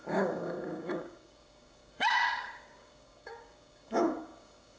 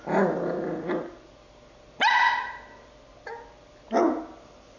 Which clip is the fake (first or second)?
first